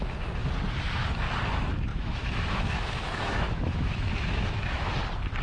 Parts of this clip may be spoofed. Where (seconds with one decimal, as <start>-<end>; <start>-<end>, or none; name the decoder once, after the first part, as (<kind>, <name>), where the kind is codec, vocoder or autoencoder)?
1.9-5.0 (autoencoder, DAC-VAE)